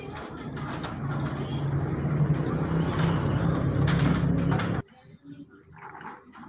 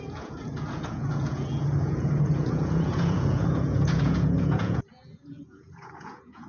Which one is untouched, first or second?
first